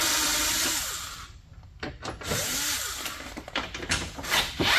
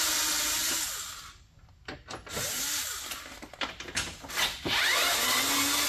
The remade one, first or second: first